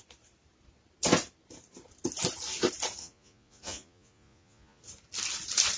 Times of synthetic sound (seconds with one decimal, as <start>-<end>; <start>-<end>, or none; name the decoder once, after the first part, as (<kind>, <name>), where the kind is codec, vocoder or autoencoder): 3.0-4.8 (vocoder, Vocos)